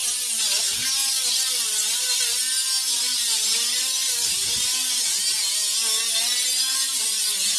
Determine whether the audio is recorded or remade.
recorded